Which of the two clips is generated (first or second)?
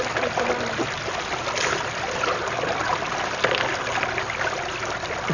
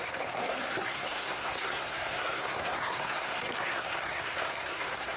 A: second